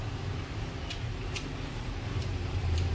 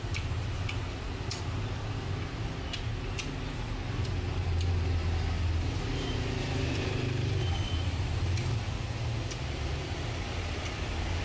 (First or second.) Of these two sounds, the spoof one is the first